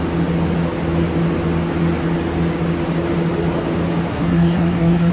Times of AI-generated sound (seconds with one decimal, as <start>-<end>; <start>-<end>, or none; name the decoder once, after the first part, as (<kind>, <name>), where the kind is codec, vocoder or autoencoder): 4.1-5.1 (codec, SNAC)